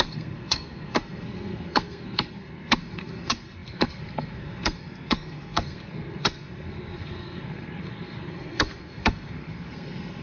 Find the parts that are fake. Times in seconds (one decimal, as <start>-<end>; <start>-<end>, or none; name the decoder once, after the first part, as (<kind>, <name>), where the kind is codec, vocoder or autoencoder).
0.0-10.2 (codec, SNAC)